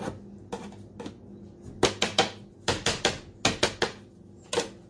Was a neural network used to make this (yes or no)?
no